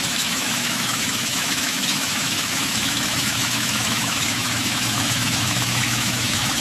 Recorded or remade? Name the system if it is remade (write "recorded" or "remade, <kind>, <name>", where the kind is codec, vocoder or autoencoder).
remade, autoencoder, DAC-VAE